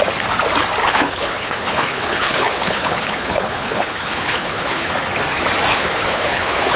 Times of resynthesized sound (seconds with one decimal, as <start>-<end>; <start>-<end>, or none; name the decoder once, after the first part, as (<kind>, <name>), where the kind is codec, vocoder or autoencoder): 0.8-4.9 (codec, HILCodec); 5.7-6.8